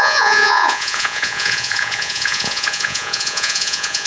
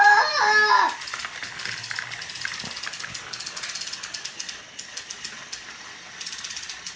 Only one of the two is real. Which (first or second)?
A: second